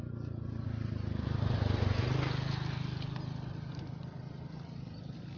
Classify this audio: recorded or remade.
recorded